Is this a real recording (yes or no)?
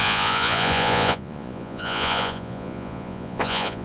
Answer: no